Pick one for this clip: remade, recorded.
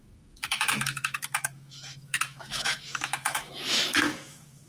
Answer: remade